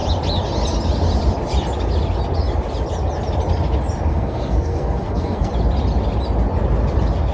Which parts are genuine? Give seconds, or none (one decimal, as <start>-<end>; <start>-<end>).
0.0-4.1; 5.5-7.3

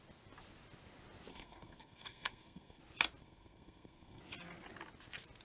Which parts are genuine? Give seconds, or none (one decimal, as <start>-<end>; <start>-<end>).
0.0-1.3; 2.8-3.2; 4.2-5.4

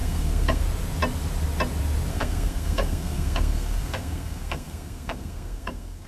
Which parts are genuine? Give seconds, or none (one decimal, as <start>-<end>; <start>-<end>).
0.6-2.1

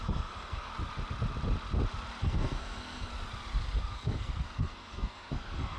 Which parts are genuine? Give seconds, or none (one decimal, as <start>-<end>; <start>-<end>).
0.7-2.2; 3.1-3.8

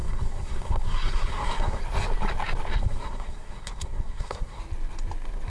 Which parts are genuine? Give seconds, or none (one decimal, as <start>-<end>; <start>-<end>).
1.8-2.7; 4.6-5.5

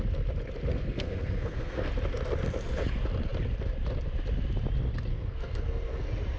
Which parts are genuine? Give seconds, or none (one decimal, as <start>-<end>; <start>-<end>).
0.0-0.7; 1.9-5.1; 6.0-6.4

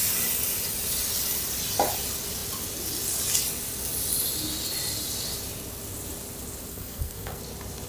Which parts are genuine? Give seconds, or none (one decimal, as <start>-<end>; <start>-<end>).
0.0-6.7; 7.4-7.9